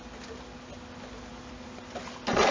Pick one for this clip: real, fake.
real